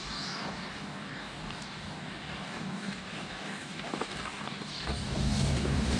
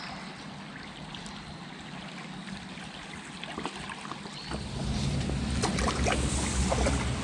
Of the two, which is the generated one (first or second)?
first